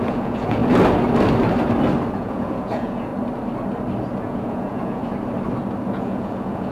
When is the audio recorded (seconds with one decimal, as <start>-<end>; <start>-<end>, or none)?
0.6-2.1; 3.1-4.2; 5.0-5.9